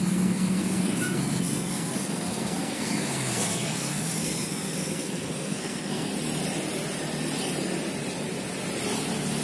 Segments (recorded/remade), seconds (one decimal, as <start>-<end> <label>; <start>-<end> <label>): 0.0-6.1 remade; 6.1-9.4 recorded